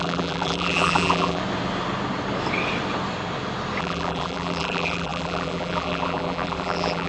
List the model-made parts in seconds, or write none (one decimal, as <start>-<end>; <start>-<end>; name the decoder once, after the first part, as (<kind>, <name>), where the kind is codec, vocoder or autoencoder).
0.0-1.4 (vocoder, BigVGAN v2); 3.8-7.1